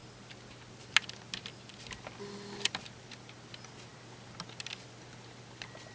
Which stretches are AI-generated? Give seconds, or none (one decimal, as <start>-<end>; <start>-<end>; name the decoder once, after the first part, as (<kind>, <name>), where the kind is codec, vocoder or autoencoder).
none